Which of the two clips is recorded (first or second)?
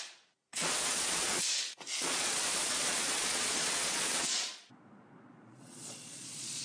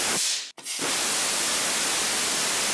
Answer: second